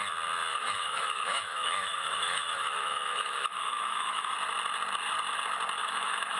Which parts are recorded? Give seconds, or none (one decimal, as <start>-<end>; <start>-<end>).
0.0-0.5; 4.3-5.8